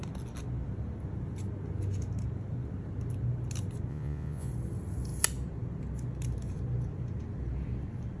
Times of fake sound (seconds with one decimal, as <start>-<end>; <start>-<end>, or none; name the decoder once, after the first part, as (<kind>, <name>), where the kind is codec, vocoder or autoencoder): 3.9-4.5 (vocoder, Vocos)